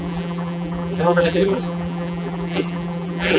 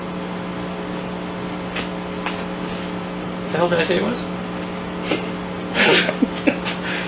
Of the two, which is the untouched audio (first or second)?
second